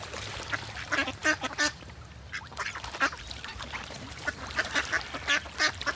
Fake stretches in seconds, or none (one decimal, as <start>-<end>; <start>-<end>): 1.2-3.0